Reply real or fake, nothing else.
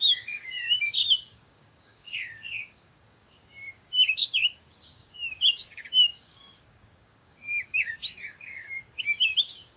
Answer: fake